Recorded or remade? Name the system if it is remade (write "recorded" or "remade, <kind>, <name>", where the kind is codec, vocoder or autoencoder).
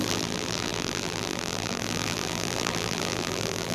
remade, vocoder, BigVGAN v2